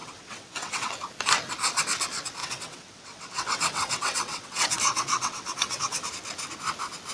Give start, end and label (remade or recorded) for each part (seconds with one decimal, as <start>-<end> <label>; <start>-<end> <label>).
0.0-0.9 remade; 0.9-2.4 recorded; 2.4-6.1 remade; 6.1-7.1 recorded